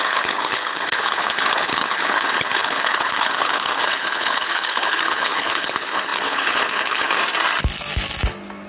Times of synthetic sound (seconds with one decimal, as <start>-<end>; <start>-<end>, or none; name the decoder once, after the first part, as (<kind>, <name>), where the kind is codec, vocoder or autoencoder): 0.0-7.2 (codec, HILCodec)